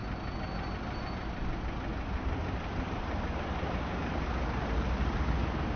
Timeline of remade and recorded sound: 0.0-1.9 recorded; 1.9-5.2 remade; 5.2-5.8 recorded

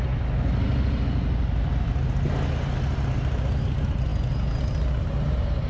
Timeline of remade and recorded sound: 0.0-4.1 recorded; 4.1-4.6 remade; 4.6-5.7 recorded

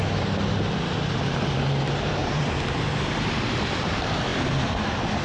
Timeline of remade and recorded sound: 0.0-4.3 remade; 4.3-5.2 recorded

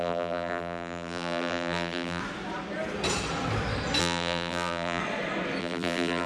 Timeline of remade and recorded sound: 0.0-2.2 remade; 2.2-4.0 recorded; 4.0-5.0 remade; 5.0-5.6 recorded; 5.6-6.3 remade

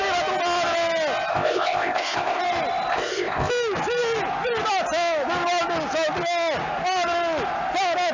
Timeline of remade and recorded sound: 0.0-1.3 recorded; 1.3-2.4 remade; 2.4-2.9 recorded; 2.9-3.5 remade; 3.5-8.1 recorded